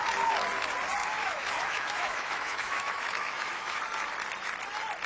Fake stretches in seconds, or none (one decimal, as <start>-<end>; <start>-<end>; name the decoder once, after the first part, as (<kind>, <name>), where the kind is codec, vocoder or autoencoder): 1.0-3.8 (autoencoder, DAC-VAE)